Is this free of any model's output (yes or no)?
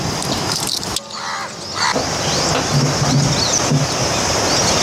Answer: yes